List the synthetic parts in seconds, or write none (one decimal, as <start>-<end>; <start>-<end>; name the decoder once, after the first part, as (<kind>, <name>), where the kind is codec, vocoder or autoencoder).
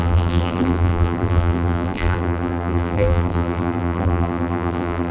0.0-5.1 (vocoder, BigVGAN v2)